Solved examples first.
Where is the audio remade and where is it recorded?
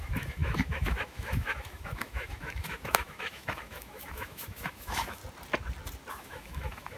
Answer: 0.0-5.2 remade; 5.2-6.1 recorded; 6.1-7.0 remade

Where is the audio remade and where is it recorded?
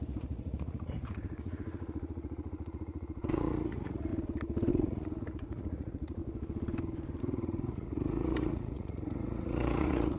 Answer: 0.0-4.1 remade; 4.1-4.7 recorded; 4.7-6.2 remade; 6.2-7.2 recorded; 7.2-10.2 remade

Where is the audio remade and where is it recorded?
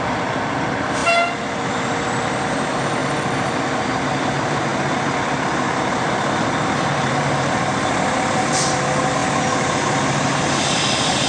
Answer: 0.0-1.0 remade; 1.0-1.7 recorded; 1.7-3.0 remade; 3.0-4.1 recorded; 4.1-4.7 remade; 4.7-5.9 recorded; 5.9-9.2 remade; 9.2-10.6 recorded; 10.6-11.3 remade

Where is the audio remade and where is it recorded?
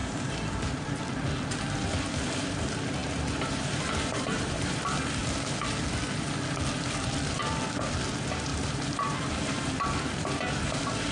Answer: 0.0-1.0 remade; 1.0-3.0 recorded; 3.0-4.8 remade; 4.8-8.5 recorded; 8.5-9.7 remade; 9.7-11.1 recorded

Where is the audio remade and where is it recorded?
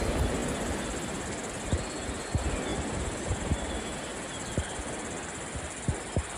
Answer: 0.0-2.7 recorded; 2.7-3.7 remade; 3.7-6.4 recorded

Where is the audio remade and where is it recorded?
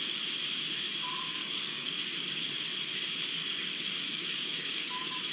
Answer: 0.0-1.4 recorded; 1.4-2.5 remade; 2.5-3.4 recorded; 3.4-5.3 remade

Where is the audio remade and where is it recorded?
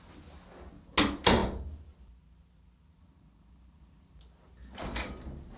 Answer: 0.0-5.6 recorded